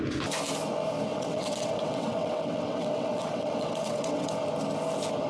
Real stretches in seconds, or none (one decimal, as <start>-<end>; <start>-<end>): 0.0-1.1; 4.3-5.3